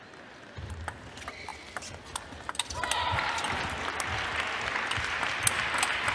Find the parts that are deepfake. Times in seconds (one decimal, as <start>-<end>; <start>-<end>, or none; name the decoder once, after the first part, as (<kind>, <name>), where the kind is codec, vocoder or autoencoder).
none

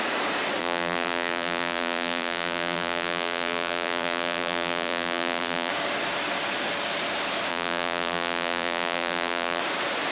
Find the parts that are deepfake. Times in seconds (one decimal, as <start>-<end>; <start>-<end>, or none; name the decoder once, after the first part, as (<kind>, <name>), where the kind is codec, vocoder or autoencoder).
0.6-5.7 (vocoder, BigVGAN v2); 7.5-9.6

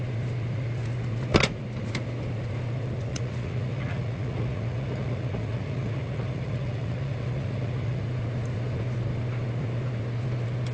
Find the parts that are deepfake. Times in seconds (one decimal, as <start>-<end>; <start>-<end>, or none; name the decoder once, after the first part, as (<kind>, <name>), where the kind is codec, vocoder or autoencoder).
3.1-8.0 (vocoder, Vocos)

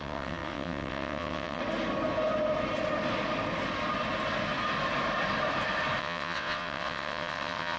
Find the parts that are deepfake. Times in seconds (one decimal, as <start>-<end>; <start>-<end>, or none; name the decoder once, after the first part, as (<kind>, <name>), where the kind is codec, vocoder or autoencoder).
0.0-1.6 (vocoder, WaveNeXt); 6.0-7.8

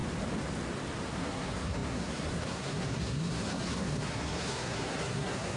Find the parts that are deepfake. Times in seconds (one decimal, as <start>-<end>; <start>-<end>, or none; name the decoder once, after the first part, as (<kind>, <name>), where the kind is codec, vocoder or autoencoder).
1.1-5.6 (codec, SNAC)